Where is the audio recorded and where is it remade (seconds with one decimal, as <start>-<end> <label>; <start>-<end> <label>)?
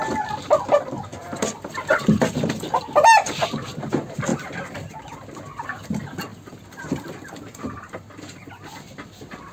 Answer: 0.0-9.5 recorded